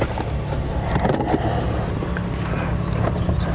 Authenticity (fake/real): real